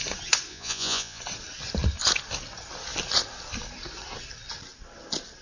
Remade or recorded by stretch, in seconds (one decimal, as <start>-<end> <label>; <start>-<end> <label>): 0.0-0.5 recorded; 0.5-1.2 remade; 1.2-5.4 recorded